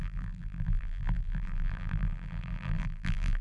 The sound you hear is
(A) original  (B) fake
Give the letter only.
B